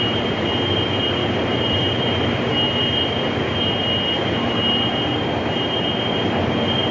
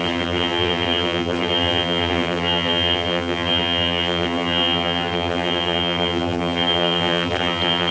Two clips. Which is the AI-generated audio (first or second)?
second